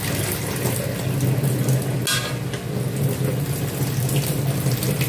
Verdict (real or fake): real